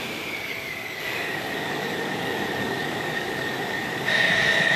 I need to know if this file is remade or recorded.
remade